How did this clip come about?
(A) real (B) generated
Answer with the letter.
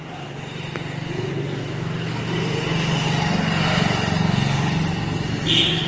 A